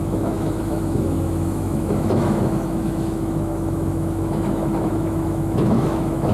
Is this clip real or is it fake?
fake